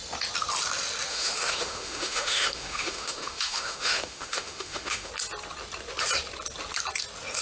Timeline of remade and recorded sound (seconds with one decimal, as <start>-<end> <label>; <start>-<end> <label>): 0.0-1.1 recorded; 1.1-5.1 remade; 5.1-7.4 recorded